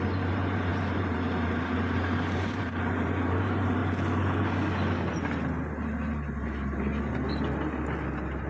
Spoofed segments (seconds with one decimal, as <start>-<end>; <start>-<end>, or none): 0.0-3.8